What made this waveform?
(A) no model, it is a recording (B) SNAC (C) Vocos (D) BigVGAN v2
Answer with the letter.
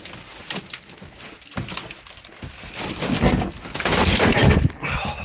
A